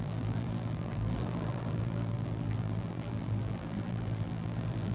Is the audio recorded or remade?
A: remade